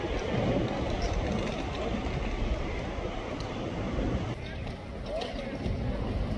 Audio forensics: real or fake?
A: real